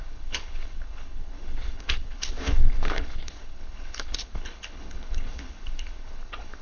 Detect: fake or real fake